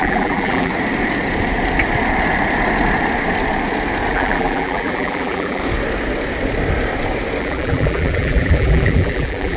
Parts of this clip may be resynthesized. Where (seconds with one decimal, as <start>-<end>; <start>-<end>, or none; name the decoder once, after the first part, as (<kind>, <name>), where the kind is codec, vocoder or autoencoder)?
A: 0.0-0.7 (vocoder, BigVGAN v2); 4.1-5.6; 7.4-9.6